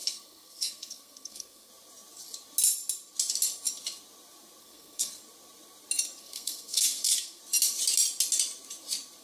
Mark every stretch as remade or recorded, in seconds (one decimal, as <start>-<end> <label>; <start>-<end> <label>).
0.0-1.7 remade; 1.7-4.6 recorded; 4.6-5.2 remade; 5.2-6.2 recorded; 6.2-7.4 remade; 7.4-9.2 recorded